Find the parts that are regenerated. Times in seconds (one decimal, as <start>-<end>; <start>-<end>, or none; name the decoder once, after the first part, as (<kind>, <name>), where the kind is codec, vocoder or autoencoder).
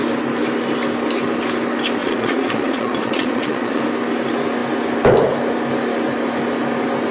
2.0-3.8 (vocoder, Vocos)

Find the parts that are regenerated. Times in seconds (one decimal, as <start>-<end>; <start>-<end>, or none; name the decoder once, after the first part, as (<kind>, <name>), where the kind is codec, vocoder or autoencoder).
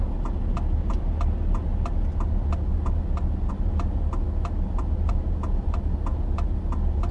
none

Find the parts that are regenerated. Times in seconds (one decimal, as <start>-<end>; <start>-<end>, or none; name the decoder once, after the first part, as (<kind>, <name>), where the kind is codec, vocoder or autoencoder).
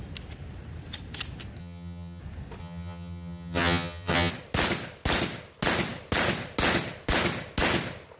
1.6-2.2 (vocoder, HiFi-GAN); 2.6-4.3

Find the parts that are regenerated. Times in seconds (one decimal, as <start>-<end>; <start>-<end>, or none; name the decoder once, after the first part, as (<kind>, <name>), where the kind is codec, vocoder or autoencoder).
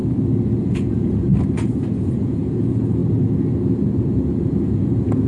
0.6-1.3 (vocoder, Vocos); 1.9-3.0; 4.4-5.3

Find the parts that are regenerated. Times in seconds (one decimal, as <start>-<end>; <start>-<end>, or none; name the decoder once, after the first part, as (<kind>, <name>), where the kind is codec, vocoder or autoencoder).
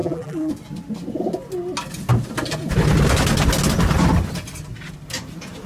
0.0-0.5 (vocoder, BigVGAN v2)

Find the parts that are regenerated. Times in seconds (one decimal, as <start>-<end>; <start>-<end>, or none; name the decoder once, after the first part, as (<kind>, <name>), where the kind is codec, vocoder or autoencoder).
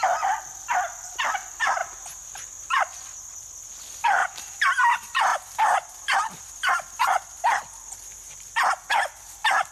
4.2-4.7 (vocoder, BigVGAN v2); 5.3-6.5; 8.1-8.6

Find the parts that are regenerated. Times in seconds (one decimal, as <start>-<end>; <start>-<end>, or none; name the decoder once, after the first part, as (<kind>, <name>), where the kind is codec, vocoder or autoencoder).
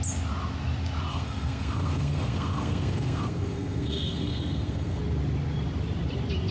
1.1-5.0 (codec, SNAC)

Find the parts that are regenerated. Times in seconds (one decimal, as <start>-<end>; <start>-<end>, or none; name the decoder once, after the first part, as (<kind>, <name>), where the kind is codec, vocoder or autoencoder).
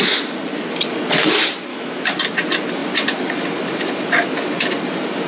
1.7-2.2 (autoencoder, DAC-VAE)